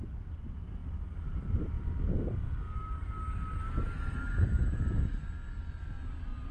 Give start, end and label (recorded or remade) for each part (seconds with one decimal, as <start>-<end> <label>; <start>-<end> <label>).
0.0-6.5 recorded